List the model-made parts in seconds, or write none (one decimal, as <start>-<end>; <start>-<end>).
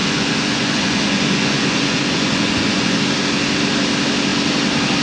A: 0.0-3.0